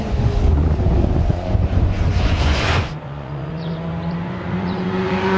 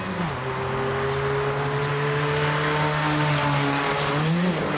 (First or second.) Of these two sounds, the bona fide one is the second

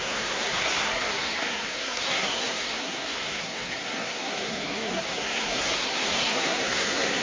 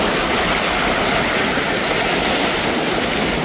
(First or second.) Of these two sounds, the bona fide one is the second